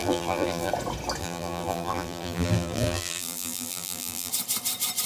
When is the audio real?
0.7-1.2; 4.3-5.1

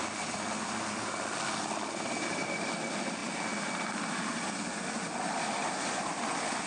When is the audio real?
0.0-6.7

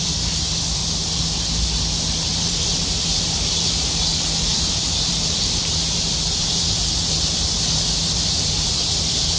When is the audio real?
0.8-2.2

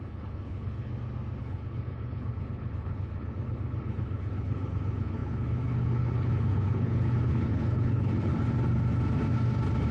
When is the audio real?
0.9-1.4; 8.3-9.9

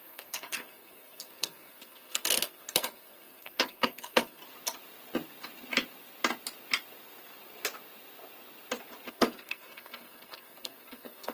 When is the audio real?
4.4-9.1

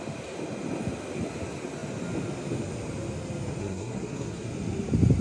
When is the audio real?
0.0-3.6; 4.5-5.2